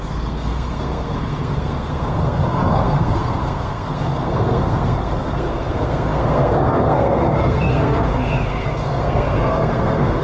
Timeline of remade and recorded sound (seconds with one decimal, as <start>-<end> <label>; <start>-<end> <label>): 0.0-10.2 remade